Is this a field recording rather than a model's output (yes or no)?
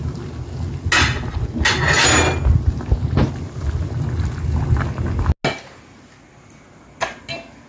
yes